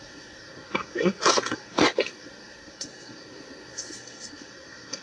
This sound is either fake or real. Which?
fake